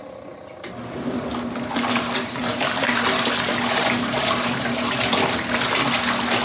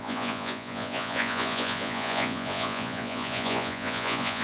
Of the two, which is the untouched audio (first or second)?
first